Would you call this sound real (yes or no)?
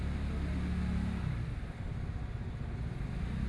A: yes